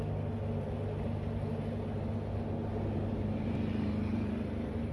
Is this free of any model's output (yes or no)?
yes